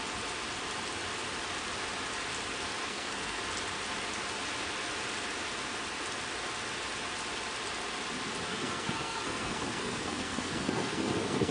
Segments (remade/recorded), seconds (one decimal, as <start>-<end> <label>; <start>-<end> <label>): 0.0-2.8 recorded; 2.8-3.4 remade; 3.4-8.5 recorded; 8.5-11.5 remade